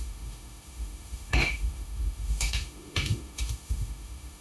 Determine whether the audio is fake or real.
fake